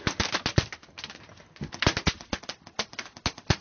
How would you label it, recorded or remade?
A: recorded